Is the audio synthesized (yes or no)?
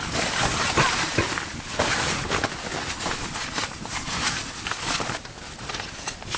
no